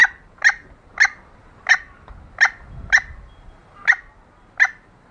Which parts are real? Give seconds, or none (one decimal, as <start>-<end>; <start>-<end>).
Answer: 0.0-5.1

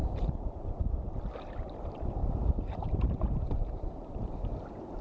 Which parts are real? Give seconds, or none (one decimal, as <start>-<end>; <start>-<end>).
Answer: 0.8-2.2; 4.3-5.0

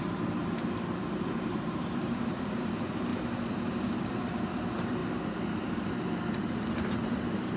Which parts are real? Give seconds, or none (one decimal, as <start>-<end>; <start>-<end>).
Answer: 5.0-6.0